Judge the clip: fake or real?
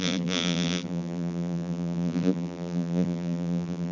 fake